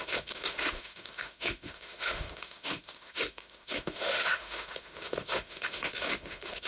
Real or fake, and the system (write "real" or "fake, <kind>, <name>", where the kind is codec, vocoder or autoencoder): fake, autoencoder, DAC-VAE